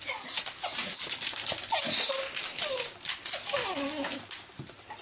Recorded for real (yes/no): yes